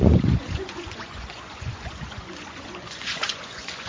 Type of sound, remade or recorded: remade